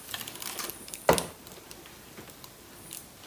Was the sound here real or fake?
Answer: fake